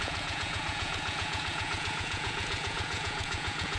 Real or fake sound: fake